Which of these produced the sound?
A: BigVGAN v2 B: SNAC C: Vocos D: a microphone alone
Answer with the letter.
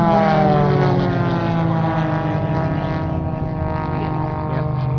D